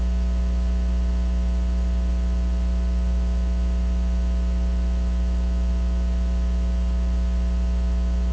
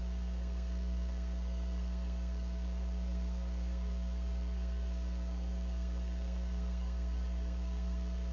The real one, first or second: first